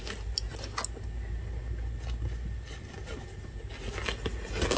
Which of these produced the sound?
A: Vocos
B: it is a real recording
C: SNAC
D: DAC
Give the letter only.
B